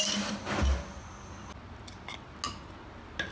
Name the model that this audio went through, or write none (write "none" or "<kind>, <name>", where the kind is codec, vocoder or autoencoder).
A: none